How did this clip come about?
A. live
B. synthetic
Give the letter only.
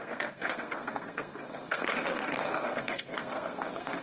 B